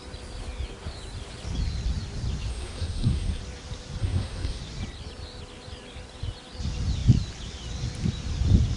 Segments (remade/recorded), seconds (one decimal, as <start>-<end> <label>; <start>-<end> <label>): 0.0-2.5 recorded; 2.5-3.4 remade; 3.4-4.0 recorded; 4.0-4.6 remade; 4.6-8.8 recorded